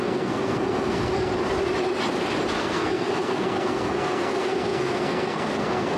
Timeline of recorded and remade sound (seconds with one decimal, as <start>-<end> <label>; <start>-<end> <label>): 0.0-1.3 remade; 1.3-2.6 recorded; 2.6-6.0 remade